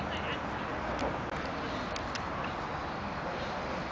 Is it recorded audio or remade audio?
recorded